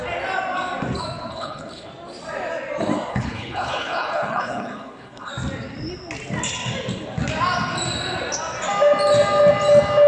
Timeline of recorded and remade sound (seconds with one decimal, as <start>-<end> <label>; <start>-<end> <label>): 0.0-1.3 recorded; 1.3-1.9 remade; 1.9-3.1 recorded; 3.1-5.3 remade; 5.3-10.1 recorded